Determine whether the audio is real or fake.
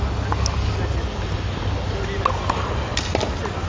real